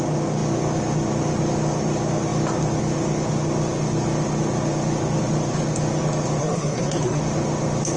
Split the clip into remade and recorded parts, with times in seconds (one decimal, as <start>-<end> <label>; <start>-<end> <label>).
0.0-6.4 recorded; 6.4-7.2 remade; 7.2-8.0 recorded